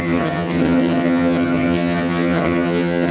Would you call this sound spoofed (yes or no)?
yes